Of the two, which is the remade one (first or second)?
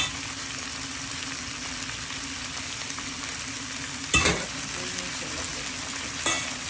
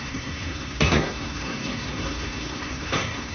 second